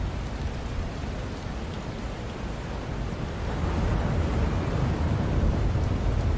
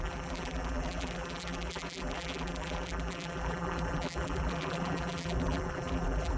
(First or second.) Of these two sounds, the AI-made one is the second